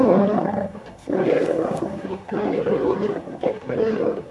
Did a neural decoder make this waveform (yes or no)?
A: yes